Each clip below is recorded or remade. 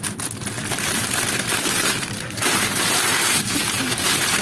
remade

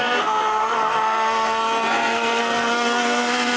remade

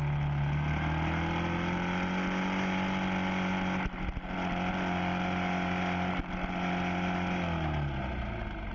recorded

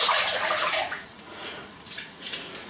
remade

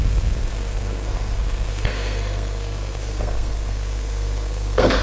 remade